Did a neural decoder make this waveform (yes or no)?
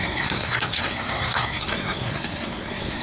yes